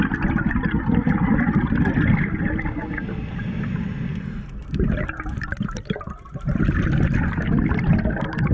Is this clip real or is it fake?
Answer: real